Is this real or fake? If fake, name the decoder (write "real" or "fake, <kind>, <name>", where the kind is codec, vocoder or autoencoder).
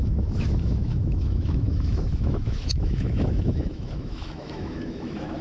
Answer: fake, autoencoder, DAC-VAE